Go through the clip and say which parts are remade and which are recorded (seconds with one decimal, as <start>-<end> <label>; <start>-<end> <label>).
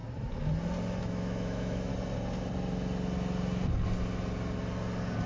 0.0-1.0 recorded; 1.0-1.9 remade; 1.9-5.3 recorded